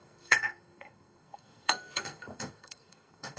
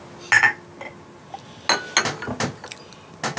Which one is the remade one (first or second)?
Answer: first